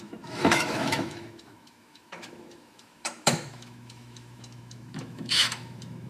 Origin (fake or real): fake